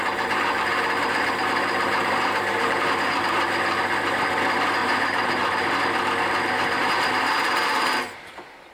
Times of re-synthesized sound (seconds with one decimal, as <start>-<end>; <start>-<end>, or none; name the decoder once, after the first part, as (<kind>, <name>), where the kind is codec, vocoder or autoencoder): 1.0-3.0 (vocoder, BigVGAN v2); 4.8-5.4; 6.8-8.7